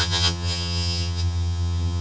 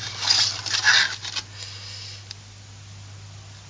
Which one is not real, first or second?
first